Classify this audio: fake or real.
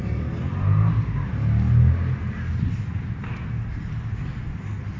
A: real